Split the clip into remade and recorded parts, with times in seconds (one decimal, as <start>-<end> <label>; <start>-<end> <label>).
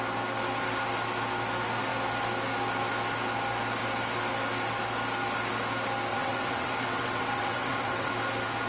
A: 0.0-6.1 recorded; 6.1-8.1 remade; 8.1-8.7 recorded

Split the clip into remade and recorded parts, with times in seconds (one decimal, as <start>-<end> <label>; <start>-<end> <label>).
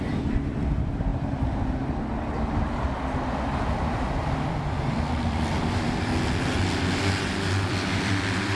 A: 0.0-1.1 remade; 1.1-4.5 recorded; 4.5-6.1 remade; 6.1-7.5 recorded; 7.5-8.6 remade